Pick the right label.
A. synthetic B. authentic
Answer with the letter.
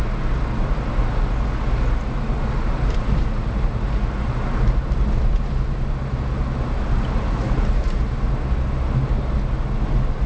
B